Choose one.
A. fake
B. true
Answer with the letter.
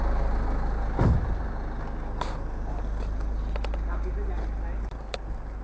B